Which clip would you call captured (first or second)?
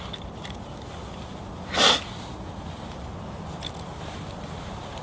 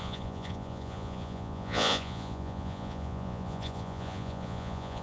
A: first